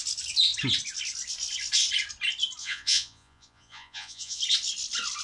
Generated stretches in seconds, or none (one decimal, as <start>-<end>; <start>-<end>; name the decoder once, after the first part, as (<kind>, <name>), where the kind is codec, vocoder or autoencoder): 2.6-4.4 (vocoder, Vocos)